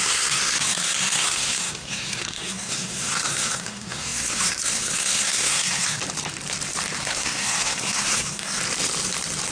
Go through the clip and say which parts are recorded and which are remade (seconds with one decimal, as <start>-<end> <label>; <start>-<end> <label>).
0.0-6.0 remade; 6.0-7.0 recorded; 7.0-8.6 remade; 8.6-9.5 recorded

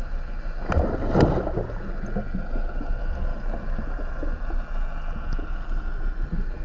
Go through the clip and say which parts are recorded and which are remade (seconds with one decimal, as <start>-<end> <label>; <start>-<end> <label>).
0.0-6.6 recorded

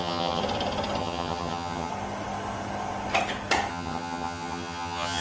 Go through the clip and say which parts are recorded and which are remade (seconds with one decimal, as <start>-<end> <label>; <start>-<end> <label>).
0.0-0.4 remade; 0.4-1.0 recorded; 1.0-1.9 remade; 1.9-3.7 recorded; 3.7-5.2 remade

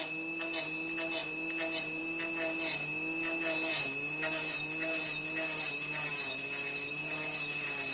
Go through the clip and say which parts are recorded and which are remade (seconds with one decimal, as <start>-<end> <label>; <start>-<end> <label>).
0.0-3.7 recorded; 3.7-5.0 remade; 5.0-7.9 recorded

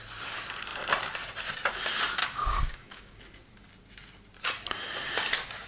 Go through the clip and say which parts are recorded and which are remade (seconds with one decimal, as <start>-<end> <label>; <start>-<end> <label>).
0.0-2.2 recorded; 2.2-3.2 remade; 3.2-5.7 recorded

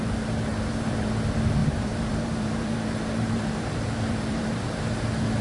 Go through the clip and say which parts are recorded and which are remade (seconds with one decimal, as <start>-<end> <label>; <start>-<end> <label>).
0.0-0.5 recorded; 0.5-1.1 remade; 1.1-1.6 recorded; 1.6-4.8 remade; 4.8-5.4 recorded

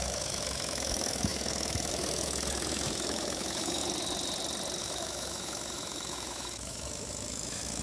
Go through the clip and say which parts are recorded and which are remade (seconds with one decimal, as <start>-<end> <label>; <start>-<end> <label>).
0.0-3.8 remade; 3.8-4.8 recorded; 4.8-7.8 remade

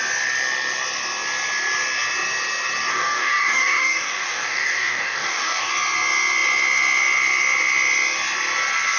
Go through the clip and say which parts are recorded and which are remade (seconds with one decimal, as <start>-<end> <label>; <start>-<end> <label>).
0.0-2.9 recorded; 2.9-5.7 remade; 5.7-9.0 recorded